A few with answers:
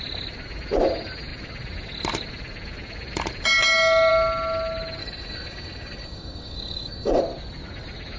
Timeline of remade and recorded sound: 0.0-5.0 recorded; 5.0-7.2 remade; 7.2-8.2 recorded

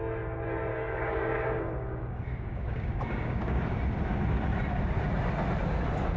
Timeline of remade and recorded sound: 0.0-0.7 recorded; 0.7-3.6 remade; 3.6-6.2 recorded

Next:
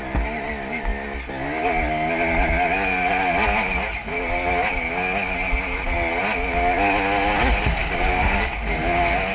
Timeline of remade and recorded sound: 0.0-7.8 recorded; 7.8-8.5 remade; 8.5-9.3 recorded

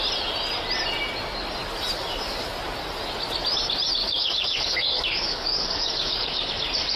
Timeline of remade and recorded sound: 0.0-4.0 recorded; 4.0-6.5 remade; 6.5-7.0 recorded

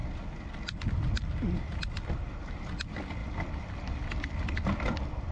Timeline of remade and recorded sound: 0.0-5.3 recorded

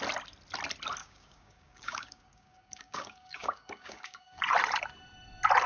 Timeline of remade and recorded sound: 0.0-1.0 recorded; 1.0-4.4 remade; 4.4-5.7 recorded